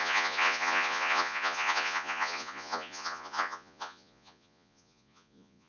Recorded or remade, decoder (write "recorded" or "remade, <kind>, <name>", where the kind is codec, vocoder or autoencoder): remade, vocoder, Vocos